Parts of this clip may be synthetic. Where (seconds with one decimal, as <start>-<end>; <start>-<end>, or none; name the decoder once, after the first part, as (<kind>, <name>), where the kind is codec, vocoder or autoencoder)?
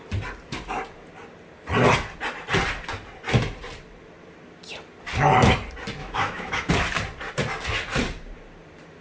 6.0-6.7 (autoencoder, DAC-VAE)